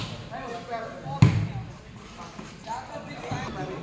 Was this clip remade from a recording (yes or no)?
yes